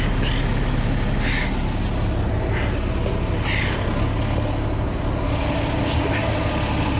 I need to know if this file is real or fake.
real